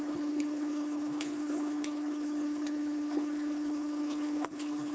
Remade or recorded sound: remade